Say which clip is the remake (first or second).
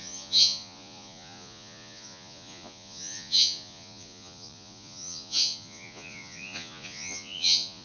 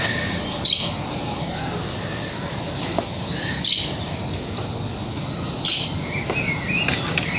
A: first